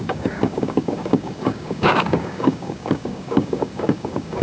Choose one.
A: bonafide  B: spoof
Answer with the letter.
B